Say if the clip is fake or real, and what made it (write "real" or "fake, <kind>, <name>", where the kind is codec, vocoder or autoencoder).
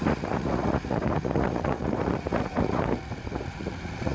fake, vocoder, Vocos